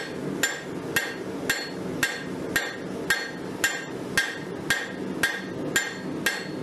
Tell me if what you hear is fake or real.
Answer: real